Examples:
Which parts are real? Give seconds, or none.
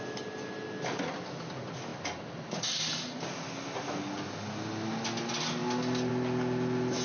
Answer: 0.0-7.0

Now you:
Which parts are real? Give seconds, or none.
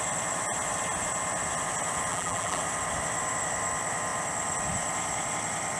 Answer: 0.0-2.1; 2.6-5.8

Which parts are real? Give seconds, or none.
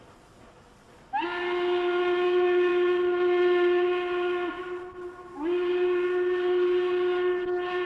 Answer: 0.0-7.9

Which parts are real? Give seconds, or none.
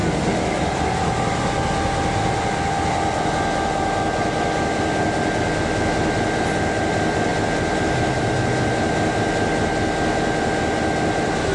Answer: 1.4-7.3; 8.7-11.5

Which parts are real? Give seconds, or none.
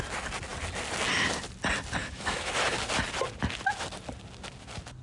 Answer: 0.0-2.0; 2.5-5.0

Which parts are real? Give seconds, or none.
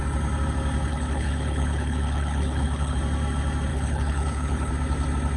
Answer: 0.0-0.9; 3.0-3.7; 4.7-5.4